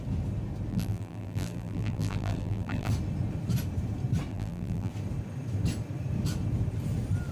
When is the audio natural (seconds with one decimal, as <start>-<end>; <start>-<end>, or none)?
0.0-0.7; 2.9-4.3; 4.9-7.3